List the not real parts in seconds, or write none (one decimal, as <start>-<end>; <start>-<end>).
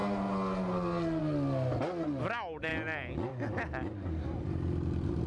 none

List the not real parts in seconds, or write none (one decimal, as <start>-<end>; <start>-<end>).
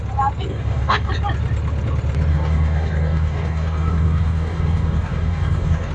0.5-1.1; 2.3-5.9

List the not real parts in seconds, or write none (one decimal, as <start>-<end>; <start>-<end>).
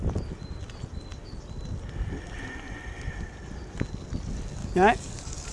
4.6-5.5